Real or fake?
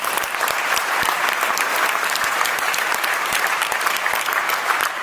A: fake